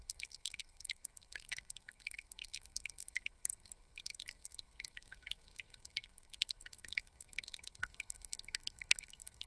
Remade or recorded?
remade